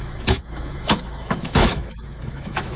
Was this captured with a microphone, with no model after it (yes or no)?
no